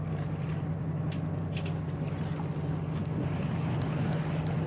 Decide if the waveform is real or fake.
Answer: real